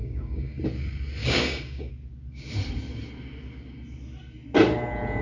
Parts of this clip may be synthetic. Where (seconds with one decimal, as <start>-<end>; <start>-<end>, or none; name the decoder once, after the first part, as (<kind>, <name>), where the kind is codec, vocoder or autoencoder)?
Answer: 0.0-0.6 (codec, DAC); 1.2-1.9

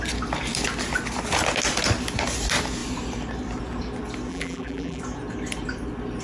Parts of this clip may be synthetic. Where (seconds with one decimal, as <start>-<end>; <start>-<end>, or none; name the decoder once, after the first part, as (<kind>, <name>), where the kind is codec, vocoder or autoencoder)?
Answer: 4.3-5.0 (vocoder, BigVGAN v2)

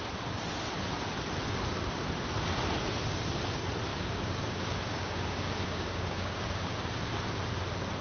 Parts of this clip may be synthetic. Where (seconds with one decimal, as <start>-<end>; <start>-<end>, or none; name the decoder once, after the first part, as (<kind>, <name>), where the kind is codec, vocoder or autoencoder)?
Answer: 3.9-6.9 (codec, DAC)